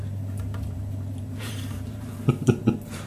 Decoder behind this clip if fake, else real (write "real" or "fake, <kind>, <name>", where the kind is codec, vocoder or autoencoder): fake, vocoder, BigVGAN v2